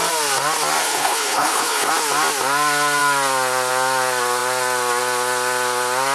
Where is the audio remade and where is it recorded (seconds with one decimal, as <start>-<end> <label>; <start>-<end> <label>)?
0.0-0.8 recorded; 0.8-1.9 remade; 1.9-6.1 recorded